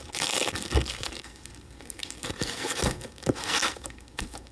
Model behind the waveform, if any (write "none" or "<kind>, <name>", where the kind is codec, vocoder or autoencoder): codec, SNAC